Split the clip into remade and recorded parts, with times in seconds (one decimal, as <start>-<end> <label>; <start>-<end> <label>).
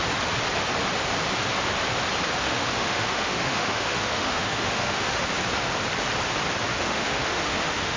0.0-2.4 recorded; 2.4-5.2 remade; 5.2-6.7 recorded; 6.7-8.0 remade